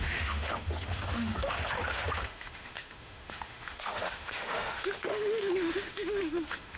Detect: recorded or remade remade